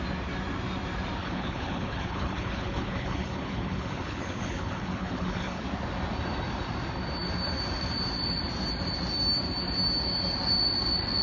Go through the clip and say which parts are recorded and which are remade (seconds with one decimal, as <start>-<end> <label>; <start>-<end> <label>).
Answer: 0.0-1.2 recorded; 1.2-5.6 remade; 5.6-11.2 recorded

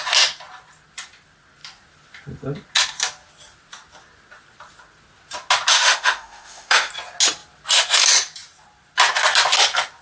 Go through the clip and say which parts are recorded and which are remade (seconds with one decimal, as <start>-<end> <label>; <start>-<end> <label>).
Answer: 0.0-5.7 recorded; 5.7-6.9 remade; 6.9-10.0 recorded

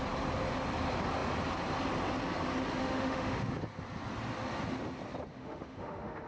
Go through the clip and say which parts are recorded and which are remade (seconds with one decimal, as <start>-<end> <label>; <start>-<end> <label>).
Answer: 0.0-2.8 recorded; 2.8-3.5 remade; 3.5-5.3 recorded; 5.3-6.3 remade

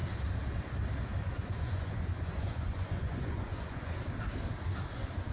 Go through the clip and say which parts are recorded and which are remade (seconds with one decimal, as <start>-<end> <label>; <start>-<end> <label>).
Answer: 0.0-1.4 recorded; 1.4-4.0 remade; 4.0-5.3 recorded

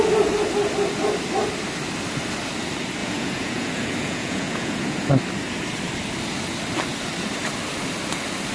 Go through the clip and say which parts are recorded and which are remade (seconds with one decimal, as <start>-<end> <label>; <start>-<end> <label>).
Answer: 0.0-3.0 recorded; 3.0-5.1 remade; 5.1-8.5 recorded

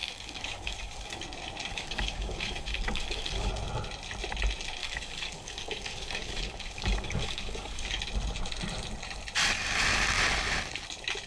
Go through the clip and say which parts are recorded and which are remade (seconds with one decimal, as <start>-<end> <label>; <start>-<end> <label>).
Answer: 0.0-1.2 remade; 1.2-1.7 recorded; 1.7-3.5 remade; 3.5-4.8 recorded; 4.8-8.0 remade; 8.0-11.3 recorded

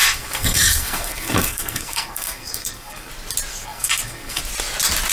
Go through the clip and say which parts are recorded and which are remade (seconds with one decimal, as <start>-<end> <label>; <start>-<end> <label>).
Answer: 0.0-3.1 remade; 3.1-3.5 recorded; 3.5-4.4 remade; 4.4-5.1 recorded